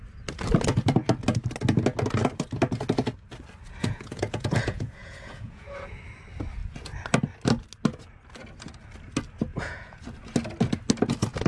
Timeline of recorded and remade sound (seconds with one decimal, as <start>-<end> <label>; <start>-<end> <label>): 0.0-3.8 recorded; 3.8-6.0 remade; 6.0-9.5 recorded; 9.5-10.0 remade; 10.0-11.5 recorded